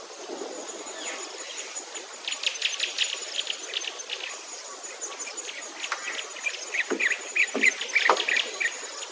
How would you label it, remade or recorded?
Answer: recorded